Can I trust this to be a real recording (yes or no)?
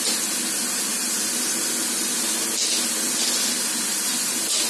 yes